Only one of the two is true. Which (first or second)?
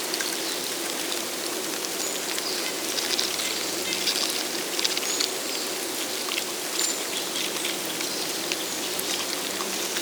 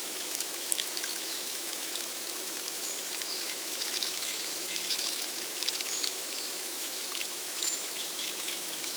first